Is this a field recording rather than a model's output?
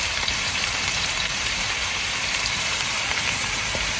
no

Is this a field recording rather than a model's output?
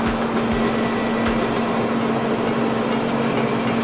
yes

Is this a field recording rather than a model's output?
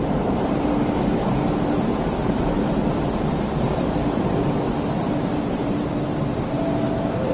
no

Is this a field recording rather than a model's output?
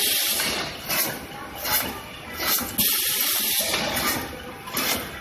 yes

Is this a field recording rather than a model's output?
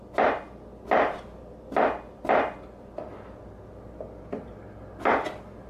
yes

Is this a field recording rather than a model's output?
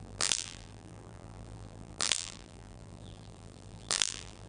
no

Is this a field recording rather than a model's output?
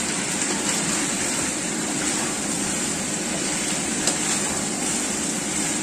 no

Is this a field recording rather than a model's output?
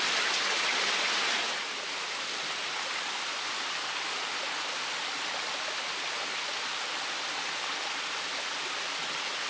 yes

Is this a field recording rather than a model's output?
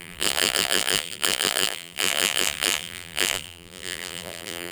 no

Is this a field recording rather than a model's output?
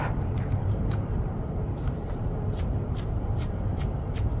no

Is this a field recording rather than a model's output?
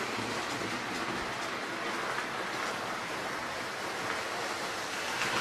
yes